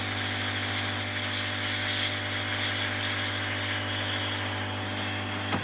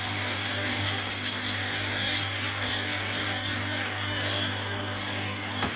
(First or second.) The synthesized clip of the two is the second